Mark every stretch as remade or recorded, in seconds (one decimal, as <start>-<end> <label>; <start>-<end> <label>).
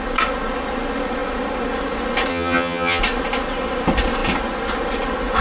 0.0-2.3 recorded; 2.3-3.0 remade; 3.0-5.4 recorded